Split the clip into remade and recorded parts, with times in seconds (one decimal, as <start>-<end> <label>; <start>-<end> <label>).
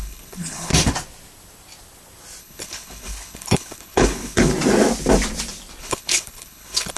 0.0-0.7 remade; 0.7-2.4 recorded; 2.4-4.5 remade; 4.5-5.8 recorded; 5.8-7.0 remade